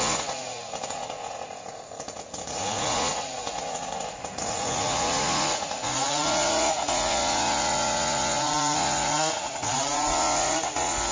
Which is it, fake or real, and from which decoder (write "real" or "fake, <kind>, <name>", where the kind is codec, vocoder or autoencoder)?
fake, vocoder, Vocos